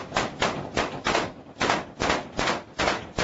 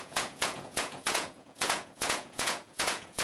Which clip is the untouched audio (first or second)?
first